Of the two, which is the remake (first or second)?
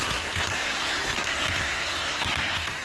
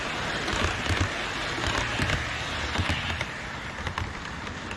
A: first